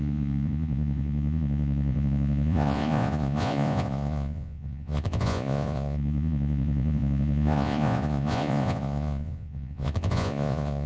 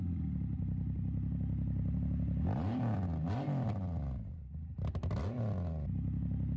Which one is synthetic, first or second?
first